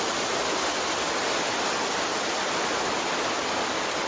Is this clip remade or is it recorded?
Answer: recorded